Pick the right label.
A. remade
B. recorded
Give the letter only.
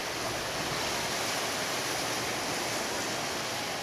B